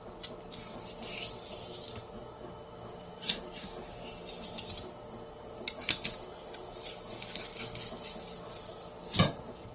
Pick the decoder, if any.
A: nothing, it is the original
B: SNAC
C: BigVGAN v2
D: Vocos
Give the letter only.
A